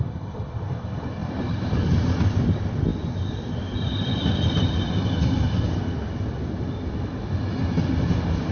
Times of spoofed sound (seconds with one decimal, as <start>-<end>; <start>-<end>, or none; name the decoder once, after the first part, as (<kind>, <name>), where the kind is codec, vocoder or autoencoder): none